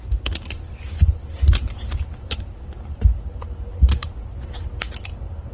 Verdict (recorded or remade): recorded